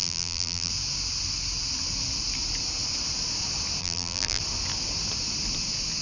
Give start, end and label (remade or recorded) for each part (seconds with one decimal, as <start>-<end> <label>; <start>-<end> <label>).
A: 0.0-0.7 remade; 0.7-3.8 recorded; 3.8-4.4 remade; 4.4-6.0 recorded